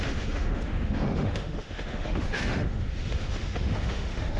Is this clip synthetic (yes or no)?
yes